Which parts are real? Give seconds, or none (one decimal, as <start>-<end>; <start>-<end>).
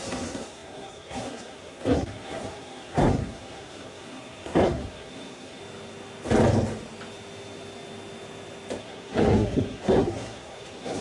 5.6-8.8